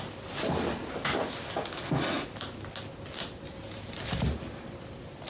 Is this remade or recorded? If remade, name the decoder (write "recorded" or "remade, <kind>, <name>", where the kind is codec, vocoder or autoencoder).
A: recorded